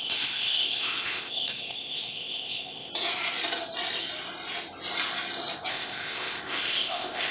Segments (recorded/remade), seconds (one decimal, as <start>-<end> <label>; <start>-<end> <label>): 0.0-2.9 remade; 2.9-5.7 recorded; 5.7-7.3 remade